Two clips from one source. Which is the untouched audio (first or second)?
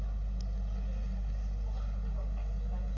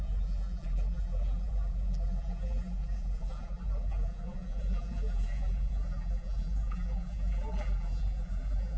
first